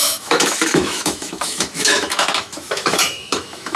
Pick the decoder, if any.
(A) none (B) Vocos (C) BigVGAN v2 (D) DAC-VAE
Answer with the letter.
D